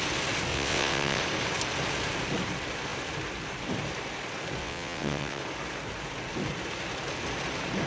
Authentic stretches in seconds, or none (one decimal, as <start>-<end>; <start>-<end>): 0.0-0.5; 1.2-4.6; 5.4-7.9